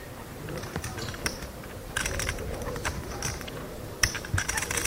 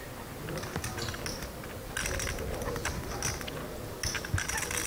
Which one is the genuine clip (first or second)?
second